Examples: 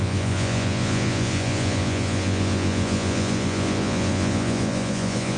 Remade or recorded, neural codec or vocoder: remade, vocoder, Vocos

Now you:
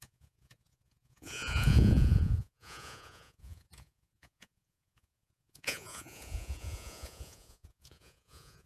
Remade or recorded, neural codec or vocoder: remade, vocoder, Vocos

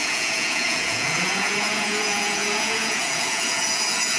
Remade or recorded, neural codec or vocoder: remade, vocoder, Vocos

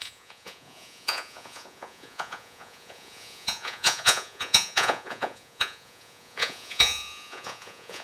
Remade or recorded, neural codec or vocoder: remade, vocoder, Vocos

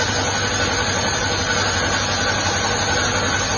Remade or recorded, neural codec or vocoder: recorded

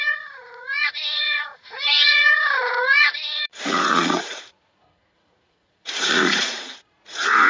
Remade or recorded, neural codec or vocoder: remade, vocoder, Vocos